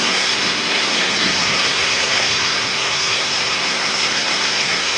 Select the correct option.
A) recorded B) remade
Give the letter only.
B